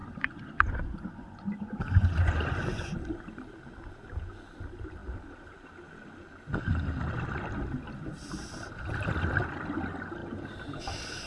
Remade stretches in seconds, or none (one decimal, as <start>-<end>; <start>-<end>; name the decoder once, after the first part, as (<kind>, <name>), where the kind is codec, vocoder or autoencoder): 0.0-2.9 (vocoder, Vocos)